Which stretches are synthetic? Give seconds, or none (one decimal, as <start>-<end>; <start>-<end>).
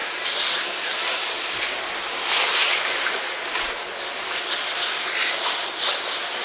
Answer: none